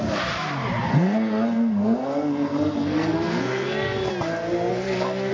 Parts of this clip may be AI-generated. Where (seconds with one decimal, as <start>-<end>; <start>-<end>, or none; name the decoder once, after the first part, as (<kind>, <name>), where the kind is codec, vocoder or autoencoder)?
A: 0.9-4.1 (codec, SNAC); 4.7-5.3